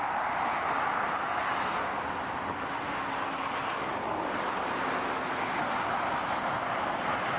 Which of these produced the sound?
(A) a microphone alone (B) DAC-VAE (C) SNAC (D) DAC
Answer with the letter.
A